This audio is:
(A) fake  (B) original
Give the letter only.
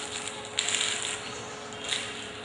B